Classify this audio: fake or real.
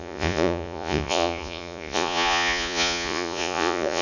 fake